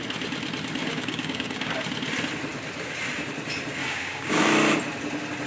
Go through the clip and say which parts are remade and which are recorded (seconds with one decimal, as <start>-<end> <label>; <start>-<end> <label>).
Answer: 0.0-0.8 recorded; 0.8-1.7 remade; 1.7-3.8 recorded; 3.8-4.4 remade; 4.4-5.5 recorded